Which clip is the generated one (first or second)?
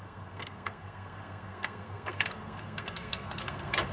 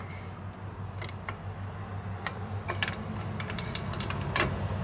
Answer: first